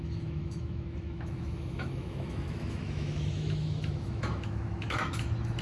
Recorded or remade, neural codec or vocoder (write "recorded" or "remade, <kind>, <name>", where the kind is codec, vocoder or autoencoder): remade, autoencoder, DAC-VAE